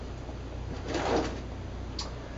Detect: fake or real real